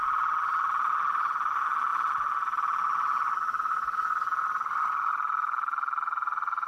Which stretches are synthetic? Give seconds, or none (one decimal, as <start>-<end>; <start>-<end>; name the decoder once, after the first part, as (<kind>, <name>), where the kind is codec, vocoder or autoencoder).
none